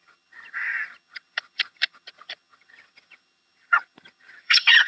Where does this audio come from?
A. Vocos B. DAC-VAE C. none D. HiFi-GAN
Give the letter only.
D